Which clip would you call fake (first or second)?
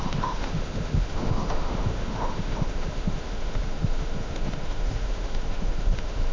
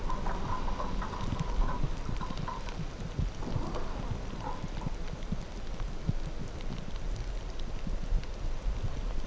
first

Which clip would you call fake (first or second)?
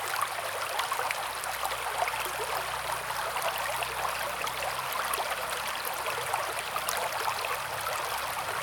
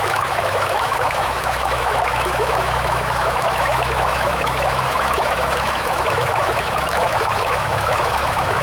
second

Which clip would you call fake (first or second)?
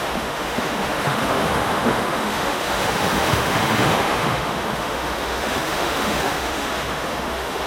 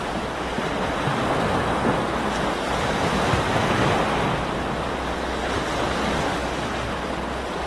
first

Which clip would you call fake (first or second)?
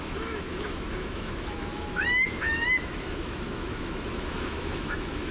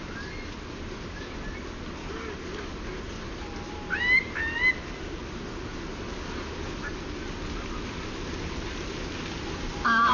first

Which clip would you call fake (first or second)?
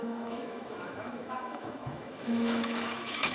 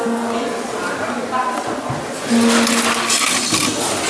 first